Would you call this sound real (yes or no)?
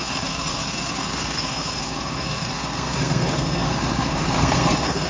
no